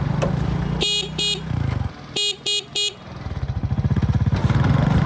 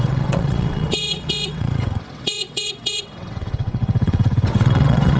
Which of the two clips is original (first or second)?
first